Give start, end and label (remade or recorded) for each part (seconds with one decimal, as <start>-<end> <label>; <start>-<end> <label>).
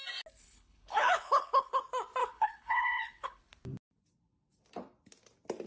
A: 0.0-0.4 recorded; 0.4-1.8 remade; 1.8-2.2 recorded; 2.2-3.4 remade; 3.4-5.7 recorded